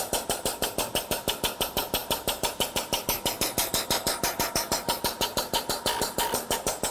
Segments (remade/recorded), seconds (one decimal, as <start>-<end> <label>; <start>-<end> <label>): 0.0-6.9 recorded